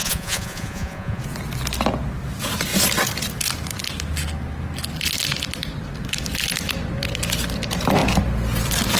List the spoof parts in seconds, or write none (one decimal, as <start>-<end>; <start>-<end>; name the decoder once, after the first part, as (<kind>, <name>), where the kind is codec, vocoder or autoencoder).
0.0-1.2 (vocoder, Vocos)